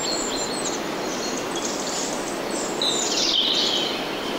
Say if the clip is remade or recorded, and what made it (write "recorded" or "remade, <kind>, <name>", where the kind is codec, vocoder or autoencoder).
recorded